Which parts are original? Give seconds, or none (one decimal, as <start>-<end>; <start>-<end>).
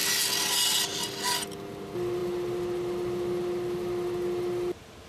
0.0-5.1